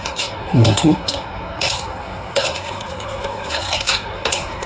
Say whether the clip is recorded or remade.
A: remade